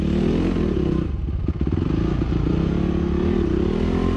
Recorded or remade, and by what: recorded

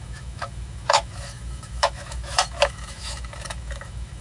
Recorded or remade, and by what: remade, autoencoder, DAC-VAE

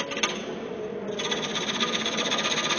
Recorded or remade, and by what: recorded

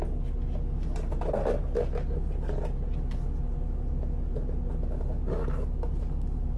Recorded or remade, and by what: recorded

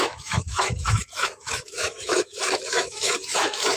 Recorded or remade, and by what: remade, autoencoder, DAC-VAE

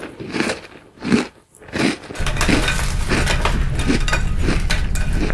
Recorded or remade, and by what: recorded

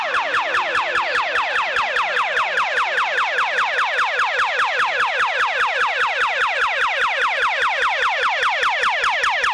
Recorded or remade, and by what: recorded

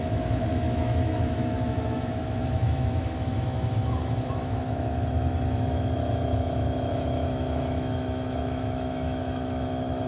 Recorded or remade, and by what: remade, autoencoder, DAC-VAE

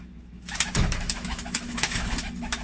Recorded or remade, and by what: remade, autoencoder, DAC-VAE